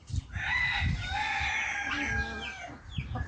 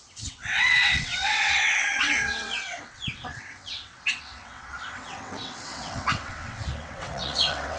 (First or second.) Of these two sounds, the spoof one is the second